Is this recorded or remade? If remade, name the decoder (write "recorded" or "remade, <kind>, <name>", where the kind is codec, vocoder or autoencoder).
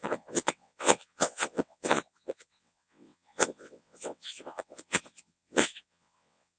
remade, vocoder, WaveNeXt